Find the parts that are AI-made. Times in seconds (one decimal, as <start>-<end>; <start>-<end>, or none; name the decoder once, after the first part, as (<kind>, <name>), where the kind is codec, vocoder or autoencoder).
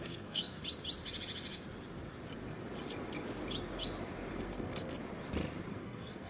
0.0-0.5 (codec, SNAC); 4.3-5.0; 5.7-6.3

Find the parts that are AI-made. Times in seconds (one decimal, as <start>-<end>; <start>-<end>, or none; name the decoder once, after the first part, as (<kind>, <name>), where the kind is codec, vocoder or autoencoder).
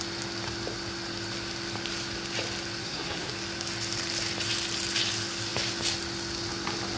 2.8-3.3 (codec, SNAC)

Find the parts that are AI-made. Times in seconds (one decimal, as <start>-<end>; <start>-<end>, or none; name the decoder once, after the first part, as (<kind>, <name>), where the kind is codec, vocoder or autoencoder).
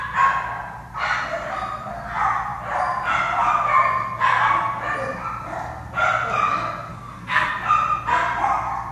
6.9-7.5 (codec, SNAC)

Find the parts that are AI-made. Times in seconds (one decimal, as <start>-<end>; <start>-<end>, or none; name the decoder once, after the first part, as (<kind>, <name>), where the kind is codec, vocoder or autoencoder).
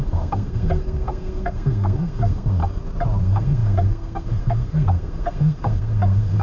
0.0-2.6 (codec, SNAC); 3.2-6.4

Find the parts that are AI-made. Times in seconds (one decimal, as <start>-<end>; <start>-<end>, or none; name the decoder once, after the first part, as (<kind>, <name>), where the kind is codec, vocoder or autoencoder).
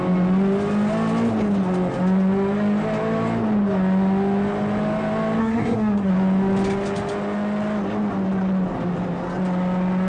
5.4-6.1 (codec, SNAC)